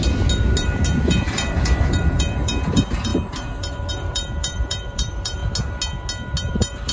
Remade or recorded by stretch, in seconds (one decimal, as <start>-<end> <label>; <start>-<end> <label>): 0.0-1.0 recorded; 1.0-5.4 remade; 5.4-6.5 recorded; 6.5-6.9 remade